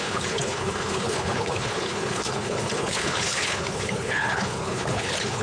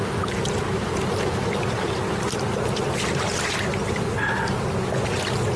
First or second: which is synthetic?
first